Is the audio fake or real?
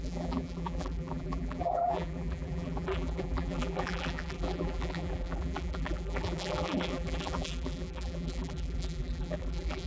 fake